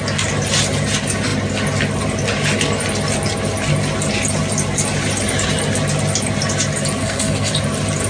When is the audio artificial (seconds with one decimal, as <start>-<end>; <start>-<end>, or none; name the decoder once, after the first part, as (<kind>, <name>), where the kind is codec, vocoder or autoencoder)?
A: 7.0-7.5 (codec, SNAC)